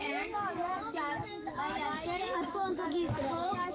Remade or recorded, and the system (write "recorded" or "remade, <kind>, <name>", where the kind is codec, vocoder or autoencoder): remade, codec, DAC